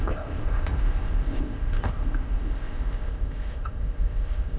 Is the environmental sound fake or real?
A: fake